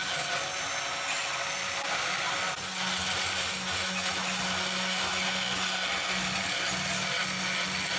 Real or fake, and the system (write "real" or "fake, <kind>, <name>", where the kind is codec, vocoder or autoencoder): real